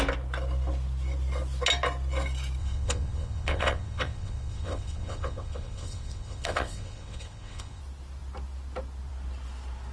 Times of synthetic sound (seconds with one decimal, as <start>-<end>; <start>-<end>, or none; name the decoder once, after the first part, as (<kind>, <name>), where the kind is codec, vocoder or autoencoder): 2.6-7.8 (vocoder, WaveNeXt)